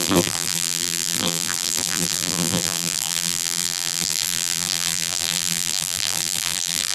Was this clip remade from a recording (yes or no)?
yes